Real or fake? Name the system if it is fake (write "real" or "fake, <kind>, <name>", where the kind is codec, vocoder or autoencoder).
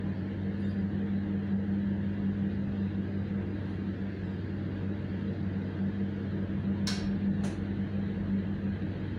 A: real